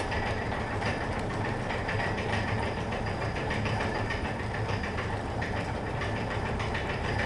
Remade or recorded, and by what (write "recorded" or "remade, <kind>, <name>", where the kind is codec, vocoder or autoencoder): remade, vocoder, BigVGAN v2